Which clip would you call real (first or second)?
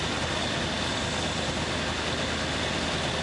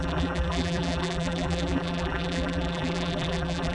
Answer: first